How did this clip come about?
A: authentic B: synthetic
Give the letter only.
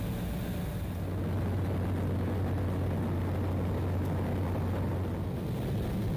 A